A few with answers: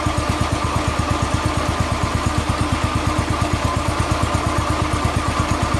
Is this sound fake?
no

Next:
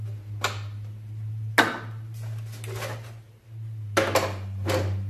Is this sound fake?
no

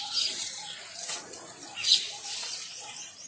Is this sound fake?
yes